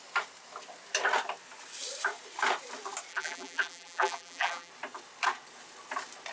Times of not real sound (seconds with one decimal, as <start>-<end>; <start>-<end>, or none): 3.1-4.7